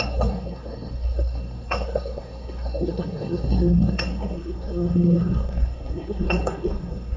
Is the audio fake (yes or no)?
yes